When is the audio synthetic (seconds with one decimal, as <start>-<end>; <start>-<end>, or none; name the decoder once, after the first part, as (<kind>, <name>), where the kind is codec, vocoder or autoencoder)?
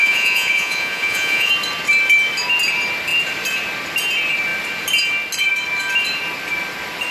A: 0.0-1.5 (vocoder, Vocos)